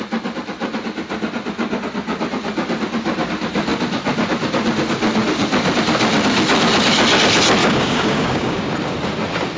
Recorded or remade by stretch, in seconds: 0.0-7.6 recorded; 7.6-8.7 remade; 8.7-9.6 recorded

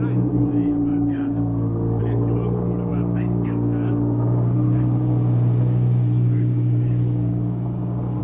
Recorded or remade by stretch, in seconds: 0.0-0.9 recorded; 0.9-2.0 remade; 2.0-2.9 recorded; 2.9-8.2 remade

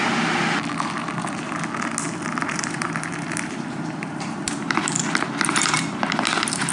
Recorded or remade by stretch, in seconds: 0.0-2.4 recorded; 2.4-6.7 remade

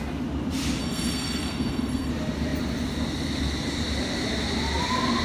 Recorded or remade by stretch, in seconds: 0.0-0.8 recorded; 0.8-2.1 remade; 2.1-5.2 recorded

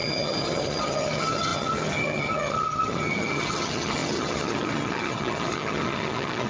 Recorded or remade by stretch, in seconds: 0.0-6.5 remade

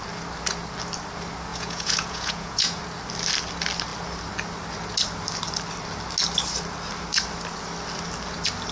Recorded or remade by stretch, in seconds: 0.0-1.5 recorded; 1.5-2.8 remade; 2.8-8.7 recorded

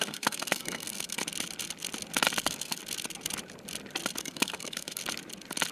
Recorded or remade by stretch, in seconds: 0.0-1.2 remade; 1.2-2.4 recorded; 2.4-2.8 remade; 2.8-4.2 recorded; 4.2-5.0 remade; 5.0-5.7 recorded